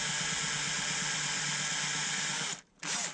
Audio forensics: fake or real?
real